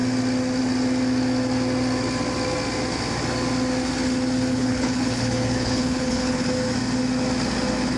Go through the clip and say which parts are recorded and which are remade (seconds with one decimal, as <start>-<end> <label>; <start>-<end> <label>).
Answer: 0.0-4.5 recorded; 4.5-6.5 remade; 6.5-8.0 recorded